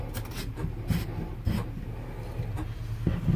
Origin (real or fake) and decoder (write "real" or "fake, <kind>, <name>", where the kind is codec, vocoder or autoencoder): real